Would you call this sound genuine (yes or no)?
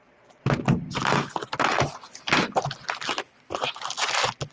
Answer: yes